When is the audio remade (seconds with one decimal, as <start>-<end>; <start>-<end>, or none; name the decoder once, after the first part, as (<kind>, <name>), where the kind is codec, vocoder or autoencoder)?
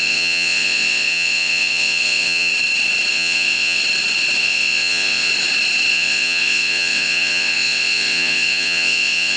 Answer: 0.0-2.5 (vocoder, WaveNeXt); 3.1-3.8; 4.4-5.3; 5.9-9.4